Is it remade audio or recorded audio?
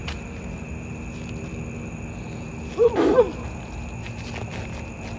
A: recorded